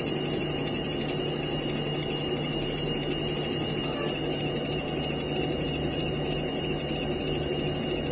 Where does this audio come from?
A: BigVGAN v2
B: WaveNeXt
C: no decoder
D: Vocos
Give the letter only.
C